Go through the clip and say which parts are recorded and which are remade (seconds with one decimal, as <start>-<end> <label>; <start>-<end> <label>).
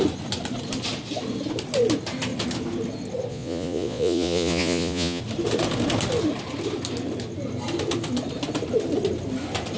0.0-3.3 recorded; 3.3-5.2 remade; 5.2-9.8 recorded